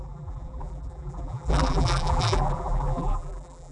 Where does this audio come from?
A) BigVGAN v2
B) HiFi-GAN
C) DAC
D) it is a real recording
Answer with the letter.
A